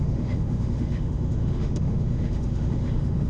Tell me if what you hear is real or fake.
fake